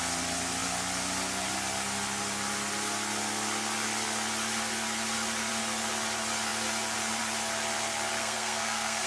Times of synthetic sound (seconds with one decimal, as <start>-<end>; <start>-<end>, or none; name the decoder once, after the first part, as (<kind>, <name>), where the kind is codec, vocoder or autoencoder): 8.2-9.1 (codec, SNAC)